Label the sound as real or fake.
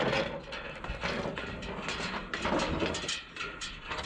real